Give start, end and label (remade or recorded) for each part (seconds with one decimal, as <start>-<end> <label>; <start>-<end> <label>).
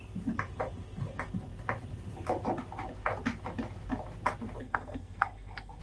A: 0.0-4.6 recorded; 4.6-5.8 remade